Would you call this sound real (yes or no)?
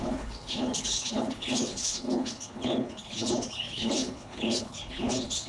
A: no